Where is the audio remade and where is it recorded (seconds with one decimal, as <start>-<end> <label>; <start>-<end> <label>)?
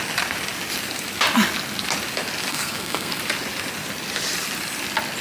0.0-2.5 recorded; 2.5-3.2 remade; 3.2-5.2 recorded